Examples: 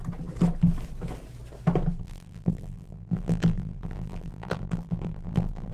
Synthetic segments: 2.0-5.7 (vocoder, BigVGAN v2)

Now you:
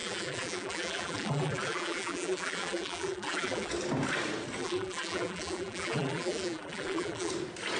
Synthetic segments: 0.0-3.7 (vocoder, BigVGAN v2); 4.6-7.3

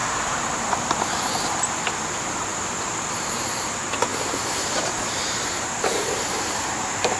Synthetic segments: 0.0-1.0 (vocoder, BigVGAN v2); 4.1-7.2

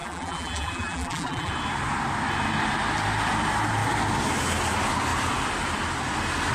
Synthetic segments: 0.0-1.5 (vocoder, BigVGAN v2)

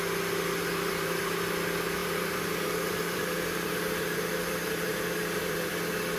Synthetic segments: 0.7-1.2 (vocoder, BigVGAN v2); 2.0-5.7

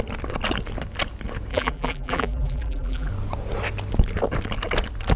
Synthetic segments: 1.5-3.1 (vocoder, BigVGAN v2)

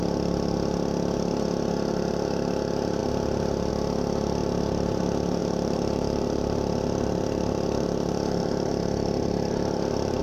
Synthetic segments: 4.4-5.0 (vocoder, BigVGAN v2); 5.4-10.2

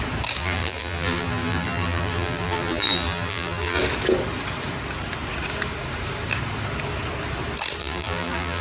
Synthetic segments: 0.4-3.8 (vocoder, BigVGAN v2); 7.8-8.6